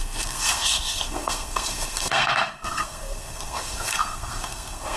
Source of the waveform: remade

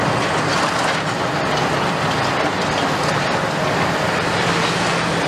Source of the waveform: recorded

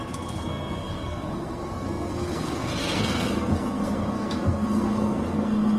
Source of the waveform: remade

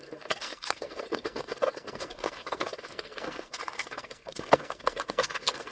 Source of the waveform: remade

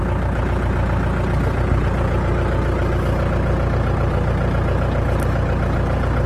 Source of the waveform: recorded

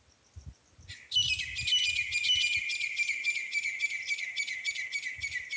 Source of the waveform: recorded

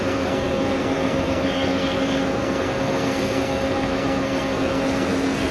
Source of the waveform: remade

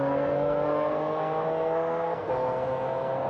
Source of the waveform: remade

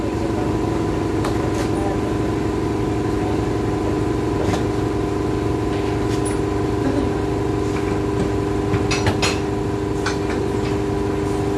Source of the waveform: recorded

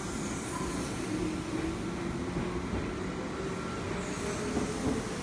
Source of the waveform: recorded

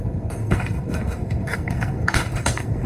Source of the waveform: remade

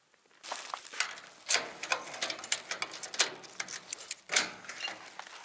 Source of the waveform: recorded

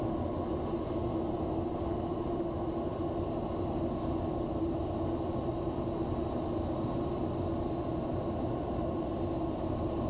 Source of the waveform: recorded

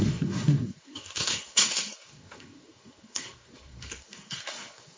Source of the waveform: remade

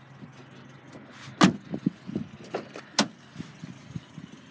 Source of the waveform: recorded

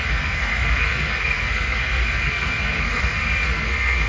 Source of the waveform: remade